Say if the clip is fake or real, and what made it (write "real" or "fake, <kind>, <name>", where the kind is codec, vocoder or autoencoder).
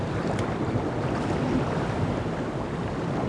fake, vocoder, BigVGAN v2